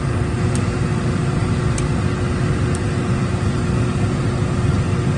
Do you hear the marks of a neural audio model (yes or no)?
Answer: no